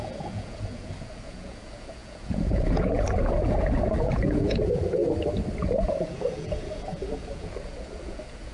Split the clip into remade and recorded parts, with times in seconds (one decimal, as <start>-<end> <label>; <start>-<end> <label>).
0.0-5.0 remade; 5.0-5.6 recorded; 5.6-8.5 remade